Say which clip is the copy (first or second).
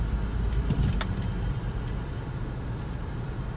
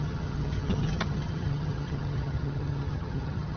second